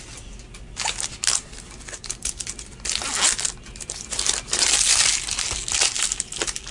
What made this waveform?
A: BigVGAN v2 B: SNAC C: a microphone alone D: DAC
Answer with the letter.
C